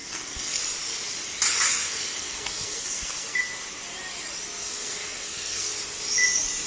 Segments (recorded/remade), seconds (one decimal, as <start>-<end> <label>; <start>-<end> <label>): 0.0-0.6 remade; 0.6-1.7 recorded; 1.7-3.4 remade; 3.4-4.6 recorded; 4.6-5.7 remade; 5.7-6.7 recorded